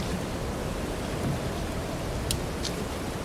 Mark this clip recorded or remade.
recorded